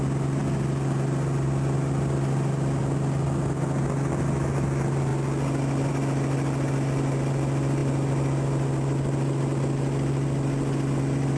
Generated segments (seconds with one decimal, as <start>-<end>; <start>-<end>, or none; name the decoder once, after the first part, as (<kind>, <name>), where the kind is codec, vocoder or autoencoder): none